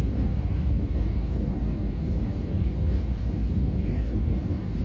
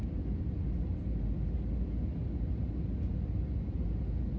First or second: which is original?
second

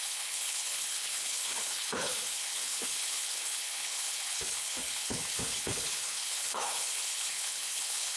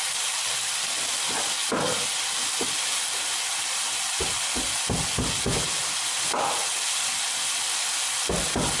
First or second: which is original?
second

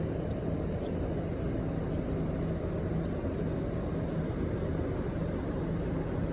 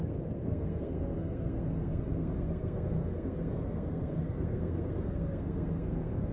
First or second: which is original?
first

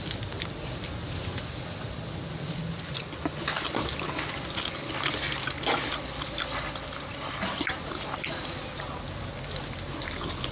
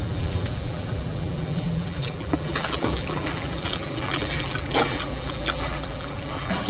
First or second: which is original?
first